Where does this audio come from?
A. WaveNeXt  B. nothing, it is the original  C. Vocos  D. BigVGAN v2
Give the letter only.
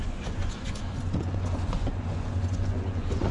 C